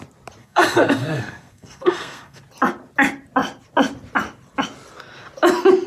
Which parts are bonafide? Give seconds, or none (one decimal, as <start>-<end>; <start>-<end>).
0.0-0.4; 2.4-5.9